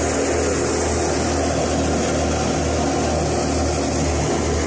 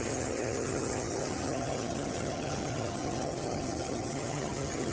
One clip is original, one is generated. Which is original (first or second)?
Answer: first